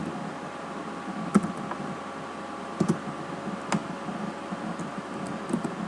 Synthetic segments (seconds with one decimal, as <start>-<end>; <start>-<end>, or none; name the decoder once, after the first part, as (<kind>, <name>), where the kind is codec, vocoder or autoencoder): none